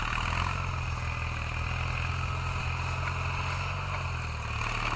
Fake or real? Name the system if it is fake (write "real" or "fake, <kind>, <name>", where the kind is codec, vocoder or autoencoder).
real